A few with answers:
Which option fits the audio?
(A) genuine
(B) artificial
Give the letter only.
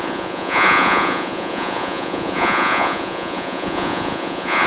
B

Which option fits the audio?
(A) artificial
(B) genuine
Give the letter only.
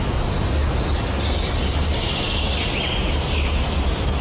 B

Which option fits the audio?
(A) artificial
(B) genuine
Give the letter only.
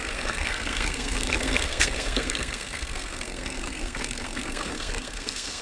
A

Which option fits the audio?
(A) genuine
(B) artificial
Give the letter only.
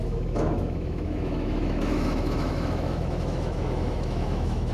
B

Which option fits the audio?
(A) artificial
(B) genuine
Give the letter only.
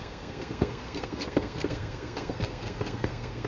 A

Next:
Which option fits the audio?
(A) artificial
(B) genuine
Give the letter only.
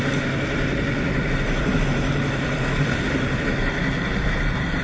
B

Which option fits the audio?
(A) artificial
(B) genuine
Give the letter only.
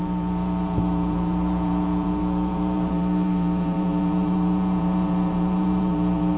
A